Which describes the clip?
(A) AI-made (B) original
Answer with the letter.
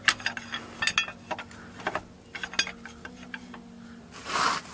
B